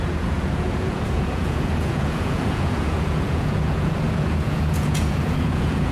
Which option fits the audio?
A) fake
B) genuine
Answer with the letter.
A